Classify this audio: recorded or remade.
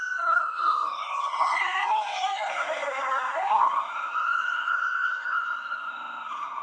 remade